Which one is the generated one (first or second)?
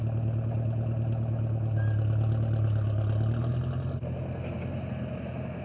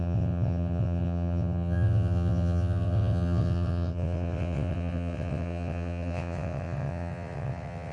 second